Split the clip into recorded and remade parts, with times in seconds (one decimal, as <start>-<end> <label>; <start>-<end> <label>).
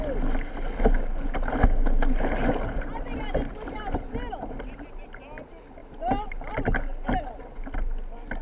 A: 0.0-8.4 recorded